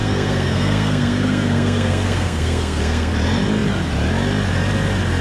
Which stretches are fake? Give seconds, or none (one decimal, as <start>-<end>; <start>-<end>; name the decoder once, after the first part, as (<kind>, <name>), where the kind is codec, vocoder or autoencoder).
0.0-3.1 (codec, SNAC)